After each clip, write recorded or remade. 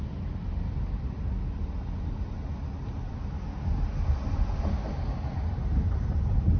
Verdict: recorded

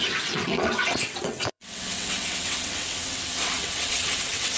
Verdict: remade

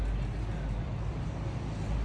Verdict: recorded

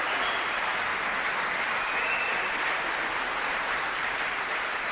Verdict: recorded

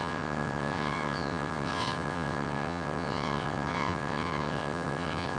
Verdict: remade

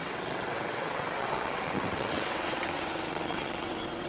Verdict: remade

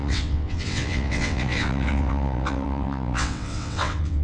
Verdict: remade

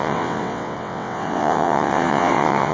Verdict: remade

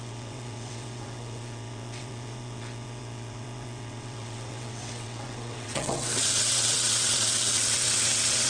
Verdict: remade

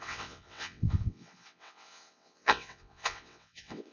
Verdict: remade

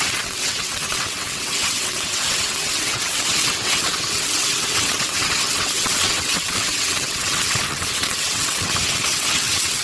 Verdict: remade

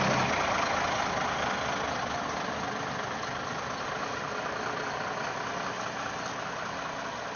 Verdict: recorded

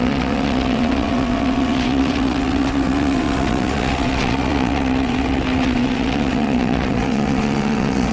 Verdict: remade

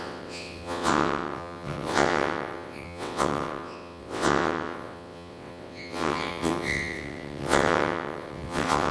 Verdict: remade